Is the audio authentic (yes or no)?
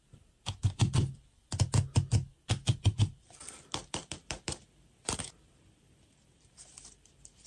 no